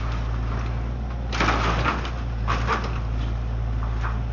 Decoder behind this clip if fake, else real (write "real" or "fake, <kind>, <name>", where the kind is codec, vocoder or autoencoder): real